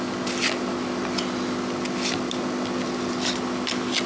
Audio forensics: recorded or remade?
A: recorded